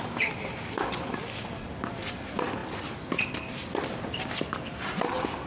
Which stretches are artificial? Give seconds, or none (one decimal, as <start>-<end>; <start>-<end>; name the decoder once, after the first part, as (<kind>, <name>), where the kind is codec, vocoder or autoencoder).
none

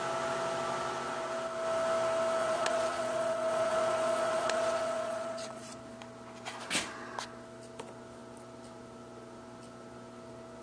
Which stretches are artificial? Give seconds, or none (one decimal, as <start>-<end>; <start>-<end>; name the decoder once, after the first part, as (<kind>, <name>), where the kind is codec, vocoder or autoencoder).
2.4-5.8 (vocoder, Vocos)

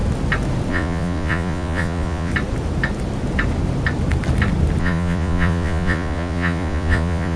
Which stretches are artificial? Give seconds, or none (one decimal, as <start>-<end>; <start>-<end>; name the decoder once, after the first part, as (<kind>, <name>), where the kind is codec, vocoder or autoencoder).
0.7-2.3 (vocoder, Vocos); 4.8-7.4

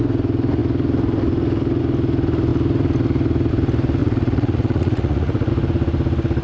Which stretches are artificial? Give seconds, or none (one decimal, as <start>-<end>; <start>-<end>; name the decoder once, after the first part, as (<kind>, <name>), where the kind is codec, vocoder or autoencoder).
4.0-5.5 (vocoder, Vocos)

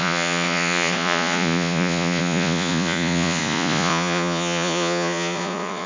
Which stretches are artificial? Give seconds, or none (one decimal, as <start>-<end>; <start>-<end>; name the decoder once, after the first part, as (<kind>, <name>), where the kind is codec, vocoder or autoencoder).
0.0-5.9 (vocoder, Vocos)

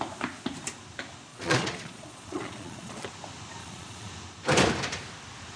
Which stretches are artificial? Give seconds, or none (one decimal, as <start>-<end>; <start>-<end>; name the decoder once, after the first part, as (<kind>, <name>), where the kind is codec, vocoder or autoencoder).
1.3-3.0 (vocoder, Vocos); 3.6-4.1

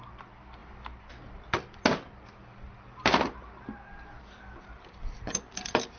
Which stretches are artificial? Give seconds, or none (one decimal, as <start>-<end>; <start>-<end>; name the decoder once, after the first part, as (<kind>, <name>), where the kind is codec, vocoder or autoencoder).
none

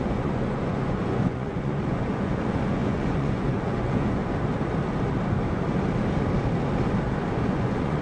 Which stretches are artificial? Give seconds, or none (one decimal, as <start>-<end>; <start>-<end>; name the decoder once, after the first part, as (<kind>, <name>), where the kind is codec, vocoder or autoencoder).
0.0-4.2 (vocoder, Vocos); 7.4-8.0